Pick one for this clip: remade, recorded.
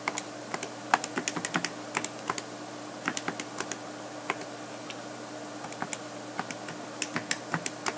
recorded